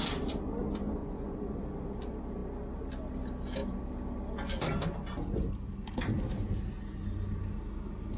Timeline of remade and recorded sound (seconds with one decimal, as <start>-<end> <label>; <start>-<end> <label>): 0.0-1.0 recorded; 1.0-1.6 remade; 1.6-8.2 recorded